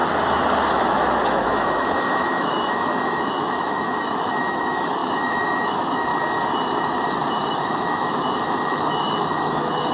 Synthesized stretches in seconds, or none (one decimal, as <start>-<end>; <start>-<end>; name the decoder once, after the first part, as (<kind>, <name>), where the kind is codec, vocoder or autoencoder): 0.7-6.1 (autoencoder, DAC-VAE); 7.5-9.9